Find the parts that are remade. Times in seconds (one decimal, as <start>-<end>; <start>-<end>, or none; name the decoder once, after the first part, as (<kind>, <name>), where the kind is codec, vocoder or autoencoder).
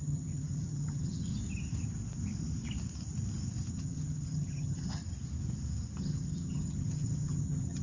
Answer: 0.0-1.3 (vocoder, HiFi-GAN); 3.7-5.0; 6.0-7.8